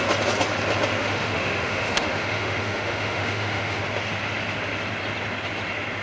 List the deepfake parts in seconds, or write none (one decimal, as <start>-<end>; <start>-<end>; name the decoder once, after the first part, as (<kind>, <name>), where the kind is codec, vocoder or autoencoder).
1.0-3.8 (autoencoder, DAC-VAE)